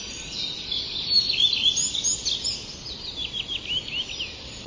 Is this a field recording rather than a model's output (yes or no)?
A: yes